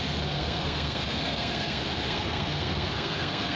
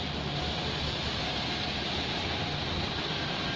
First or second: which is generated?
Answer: first